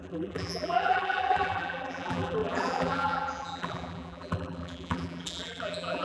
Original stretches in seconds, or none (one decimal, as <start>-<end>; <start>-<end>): none